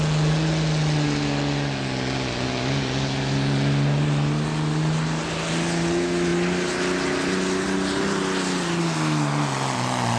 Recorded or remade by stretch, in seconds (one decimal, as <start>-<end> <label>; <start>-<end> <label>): 0.0-10.2 recorded